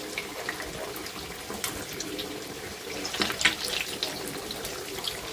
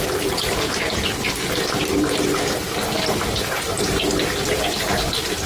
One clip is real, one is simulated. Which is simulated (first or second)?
first